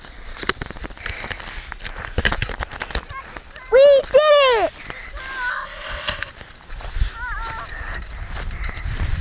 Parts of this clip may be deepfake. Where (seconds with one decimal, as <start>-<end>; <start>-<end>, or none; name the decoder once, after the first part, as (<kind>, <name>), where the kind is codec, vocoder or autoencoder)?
5.5-6.3 (codec, ZipCodec)